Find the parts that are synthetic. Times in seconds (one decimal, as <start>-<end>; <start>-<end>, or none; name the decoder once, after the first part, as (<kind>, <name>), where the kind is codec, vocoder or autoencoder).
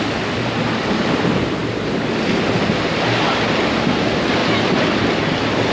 none